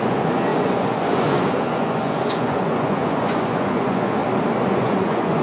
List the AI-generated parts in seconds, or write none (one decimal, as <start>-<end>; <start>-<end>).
0.0-4.2; 4.7-5.4